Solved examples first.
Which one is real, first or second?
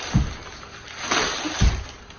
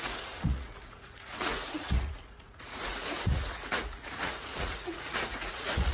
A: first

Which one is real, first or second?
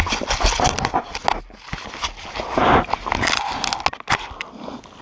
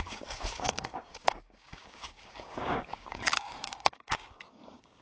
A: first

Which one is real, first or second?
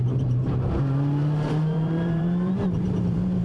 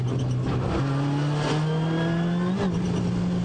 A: second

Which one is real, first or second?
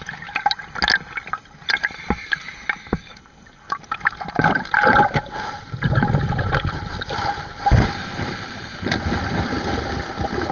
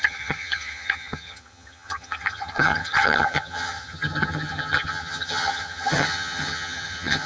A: first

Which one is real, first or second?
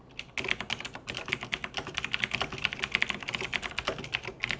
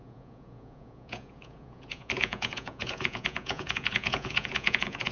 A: first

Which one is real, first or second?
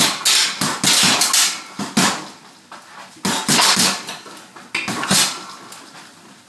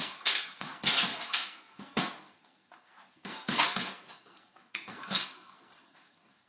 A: first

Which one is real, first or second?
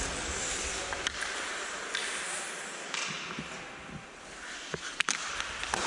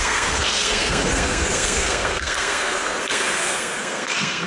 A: first